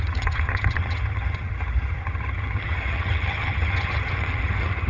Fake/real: fake